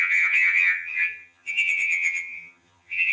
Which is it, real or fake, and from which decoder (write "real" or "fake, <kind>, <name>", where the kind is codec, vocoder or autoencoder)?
fake, vocoder, HiFi-GAN